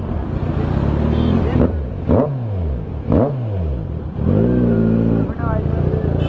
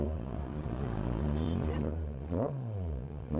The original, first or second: first